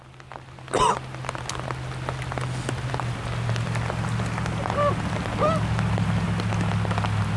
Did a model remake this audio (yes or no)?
no